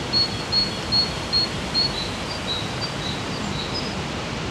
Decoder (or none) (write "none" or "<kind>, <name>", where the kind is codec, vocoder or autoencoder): none